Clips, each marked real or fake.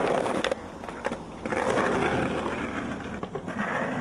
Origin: real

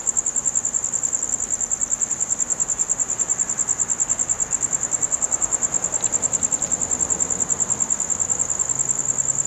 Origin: real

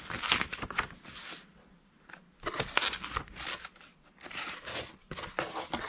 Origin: real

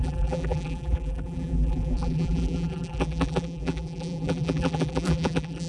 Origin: fake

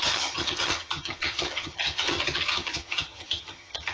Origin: fake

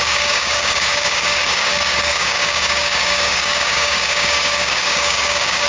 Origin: fake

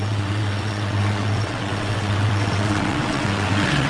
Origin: fake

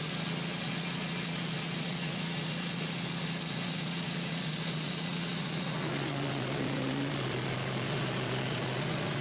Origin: fake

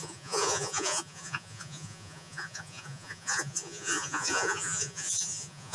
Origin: fake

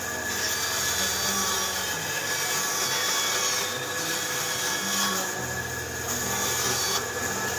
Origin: real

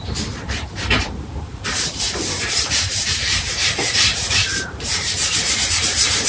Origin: fake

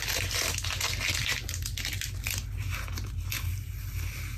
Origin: real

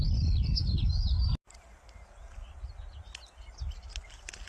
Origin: real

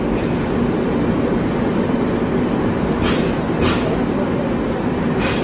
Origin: real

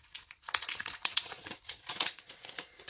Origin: fake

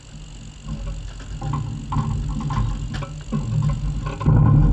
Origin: real